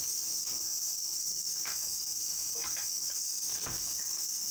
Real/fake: fake